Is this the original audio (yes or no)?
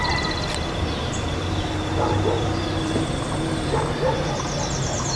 no